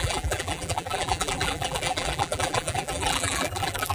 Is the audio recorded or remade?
remade